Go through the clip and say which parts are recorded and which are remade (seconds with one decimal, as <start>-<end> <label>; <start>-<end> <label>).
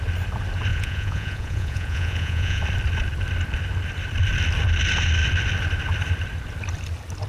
0.0-0.7 recorded; 0.7-2.6 remade; 2.6-7.3 recorded